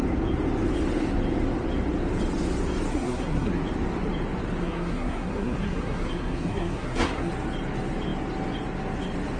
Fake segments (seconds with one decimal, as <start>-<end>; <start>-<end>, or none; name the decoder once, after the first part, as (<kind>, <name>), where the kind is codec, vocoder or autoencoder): 2.9-3.5 (codec, SNAC); 4.6-7.3